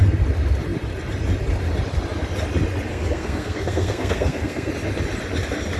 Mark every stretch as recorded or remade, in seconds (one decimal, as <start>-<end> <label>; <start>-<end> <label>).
0.0-2.9 recorded; 2.9-4.7 remade; 4.7-5.8 recorded